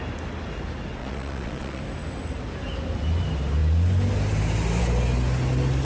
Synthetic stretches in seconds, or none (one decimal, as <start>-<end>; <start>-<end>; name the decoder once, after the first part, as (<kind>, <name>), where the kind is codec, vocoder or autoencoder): 1.0-1.8 (vocoder, Vocos)